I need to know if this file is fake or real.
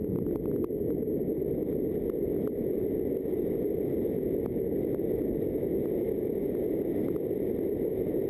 real